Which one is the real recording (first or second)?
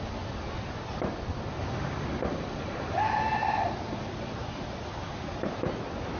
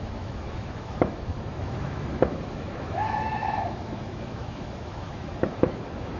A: first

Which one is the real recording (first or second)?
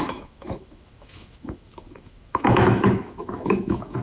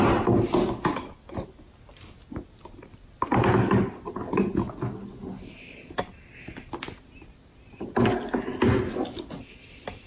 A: second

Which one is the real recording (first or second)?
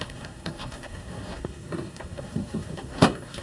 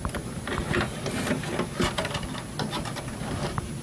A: second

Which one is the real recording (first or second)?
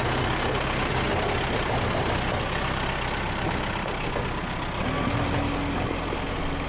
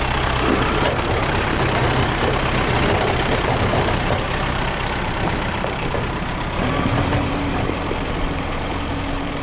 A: first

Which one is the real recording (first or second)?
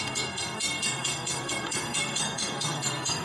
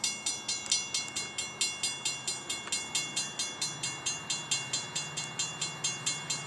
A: second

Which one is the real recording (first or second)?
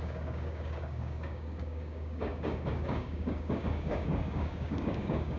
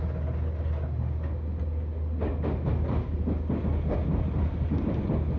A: second